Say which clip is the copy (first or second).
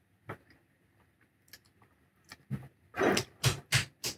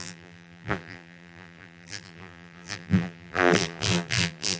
second